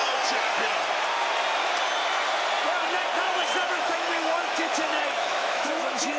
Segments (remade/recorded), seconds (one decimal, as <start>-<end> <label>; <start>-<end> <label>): 0.0-3.7 recorded; 3.7-6.2 remade

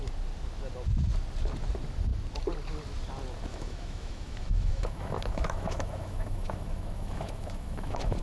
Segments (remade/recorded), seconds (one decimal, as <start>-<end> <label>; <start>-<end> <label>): 0.0-3.5 recorded; 3.5-8.2 remade

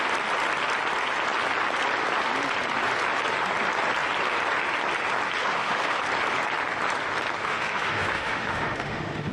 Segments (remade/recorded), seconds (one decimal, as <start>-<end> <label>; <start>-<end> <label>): 0.0-5.4 recorded; 5.4-6.0 remade; 6.0-7.4 recorded; 7.4-9.3 remade

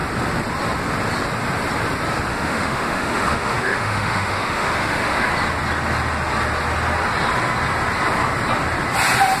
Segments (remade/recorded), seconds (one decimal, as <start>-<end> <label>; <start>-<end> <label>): 0.0-2.3 recorded; 2.3-5.3 remade; 5.3-9.4 recorded

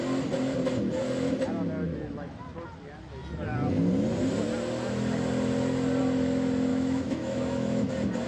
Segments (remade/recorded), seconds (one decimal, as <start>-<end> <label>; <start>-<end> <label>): 0.0-1.9 recorded; 1.9-2.4 remade; 2.4-6.7 recorded; 6.7-7.9 remade; 7.9-8.3 recorded